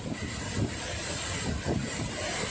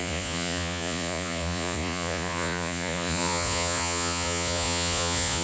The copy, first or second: second